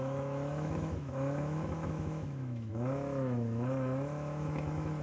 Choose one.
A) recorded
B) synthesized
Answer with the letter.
B